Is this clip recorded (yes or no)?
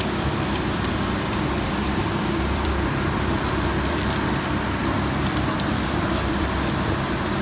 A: no